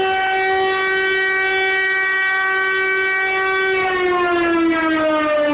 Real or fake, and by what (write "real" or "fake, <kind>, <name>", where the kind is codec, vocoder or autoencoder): real